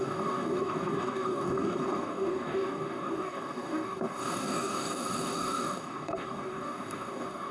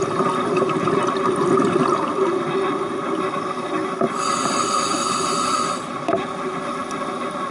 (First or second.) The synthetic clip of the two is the first